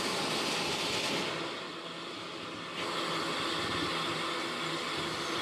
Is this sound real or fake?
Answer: real